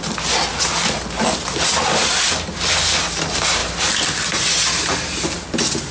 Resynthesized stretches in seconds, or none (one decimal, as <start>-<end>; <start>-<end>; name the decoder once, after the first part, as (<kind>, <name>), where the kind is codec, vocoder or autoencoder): none